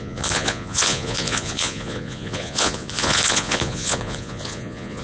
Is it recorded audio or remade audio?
remade